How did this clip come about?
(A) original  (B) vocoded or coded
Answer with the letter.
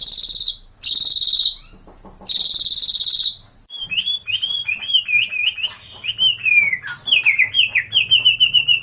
A